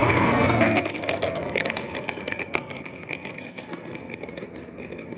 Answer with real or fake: fake